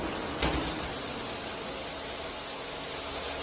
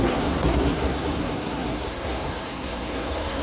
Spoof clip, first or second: second